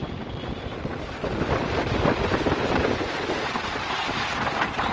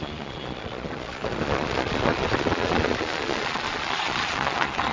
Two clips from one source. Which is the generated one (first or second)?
second